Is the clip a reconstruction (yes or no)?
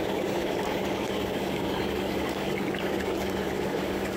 yes